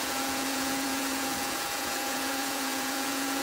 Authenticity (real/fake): fake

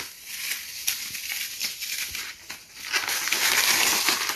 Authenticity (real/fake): real